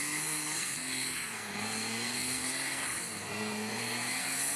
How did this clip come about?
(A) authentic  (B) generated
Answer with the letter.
B